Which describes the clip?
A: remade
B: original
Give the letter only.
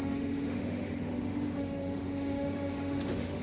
A